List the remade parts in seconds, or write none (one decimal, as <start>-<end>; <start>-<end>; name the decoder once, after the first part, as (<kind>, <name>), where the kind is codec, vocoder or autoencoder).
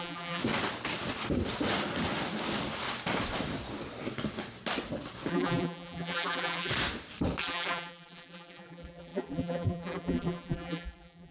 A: 0.0-0.4 (vocoder, BigVGAN v2); 5.3-6.7; 7.4-11.3